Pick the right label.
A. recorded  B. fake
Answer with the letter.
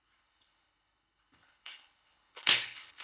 B